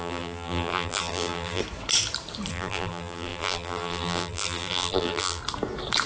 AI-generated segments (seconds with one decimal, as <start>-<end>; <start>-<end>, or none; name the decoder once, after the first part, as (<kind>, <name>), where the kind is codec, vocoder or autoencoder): 0.0-1.6 (vocoder, BigVGAN v2); 2.5-5.4